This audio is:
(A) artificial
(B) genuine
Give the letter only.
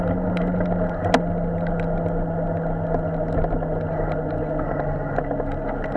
B